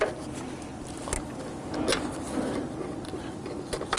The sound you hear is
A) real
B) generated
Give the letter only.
A